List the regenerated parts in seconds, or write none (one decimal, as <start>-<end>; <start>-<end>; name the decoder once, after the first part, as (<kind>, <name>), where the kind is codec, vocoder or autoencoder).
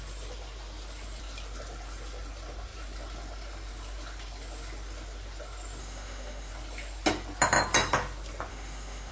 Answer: 5.8-6.5 (autoencoder, DAC-VAE); 8.5-9.1